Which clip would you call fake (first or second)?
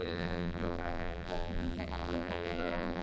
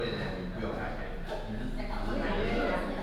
first